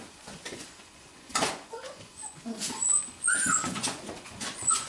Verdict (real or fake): fake